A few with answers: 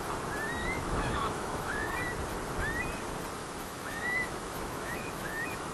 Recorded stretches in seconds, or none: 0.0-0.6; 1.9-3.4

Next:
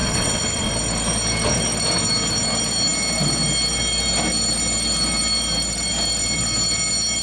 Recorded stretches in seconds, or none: 0.7-7.2

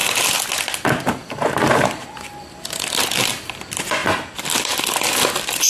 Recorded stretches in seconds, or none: 0.0-5.7

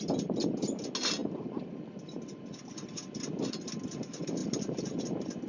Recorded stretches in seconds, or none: 0.0-5.5